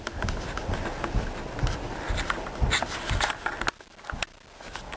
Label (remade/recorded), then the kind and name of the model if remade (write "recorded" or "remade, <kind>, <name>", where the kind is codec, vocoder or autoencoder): recorded